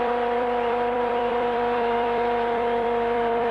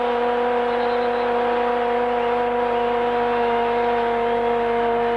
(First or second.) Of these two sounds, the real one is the second